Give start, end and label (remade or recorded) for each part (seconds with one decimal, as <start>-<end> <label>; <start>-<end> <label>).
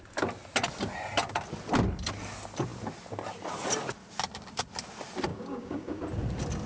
0.0-5.3 recorded; 5.3-6.0 remade; 6.0-6.7 recorded